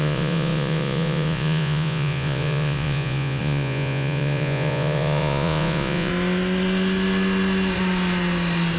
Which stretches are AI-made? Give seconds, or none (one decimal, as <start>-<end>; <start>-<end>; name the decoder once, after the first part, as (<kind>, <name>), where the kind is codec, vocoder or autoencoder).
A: 0.0-6.1 (vocoder, Vocos)

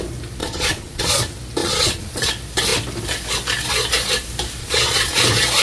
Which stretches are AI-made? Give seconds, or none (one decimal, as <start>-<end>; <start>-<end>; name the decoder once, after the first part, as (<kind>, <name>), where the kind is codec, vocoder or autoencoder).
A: 0.4-1.2 (vocoder, Vocos); 1.6-2.3; 4.6-5.1

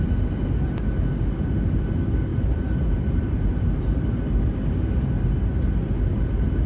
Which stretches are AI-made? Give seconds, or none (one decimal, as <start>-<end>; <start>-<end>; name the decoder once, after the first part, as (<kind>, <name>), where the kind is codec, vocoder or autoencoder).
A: 2.3-4.2 (vocoder, BigVGAN v2)

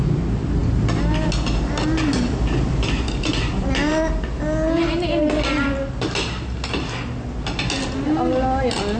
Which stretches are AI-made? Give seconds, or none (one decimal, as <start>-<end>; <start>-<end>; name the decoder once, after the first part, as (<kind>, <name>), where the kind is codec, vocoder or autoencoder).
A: none